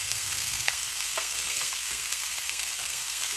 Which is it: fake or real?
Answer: fake